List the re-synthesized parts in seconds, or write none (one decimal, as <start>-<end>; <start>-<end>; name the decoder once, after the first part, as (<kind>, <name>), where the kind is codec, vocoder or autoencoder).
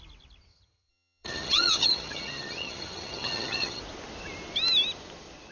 0.5-3.8 (vocoder, HiFi-GAN)